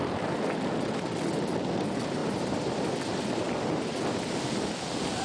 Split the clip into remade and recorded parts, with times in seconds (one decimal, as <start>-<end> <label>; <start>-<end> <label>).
0.0-5.2 recorded